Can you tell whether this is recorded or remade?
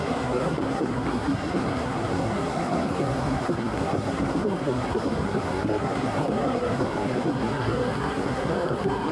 remade